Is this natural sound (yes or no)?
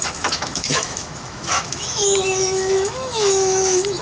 no